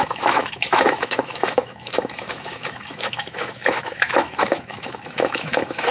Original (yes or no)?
no